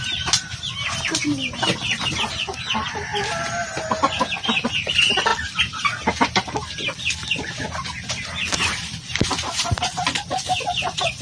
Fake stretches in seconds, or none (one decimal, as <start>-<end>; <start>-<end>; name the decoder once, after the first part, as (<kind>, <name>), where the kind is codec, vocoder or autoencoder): 0.0-3.1 (vocoder, BigVGAN v2); 4.7-5.3; 8.1-11.2